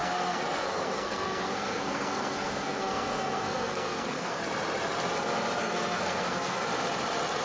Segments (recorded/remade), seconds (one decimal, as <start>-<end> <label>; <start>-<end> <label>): 0.0-4.4 remade; 4.4-5.6 recorded; 5.6-6.6 remade; 6.6-7.4 recorded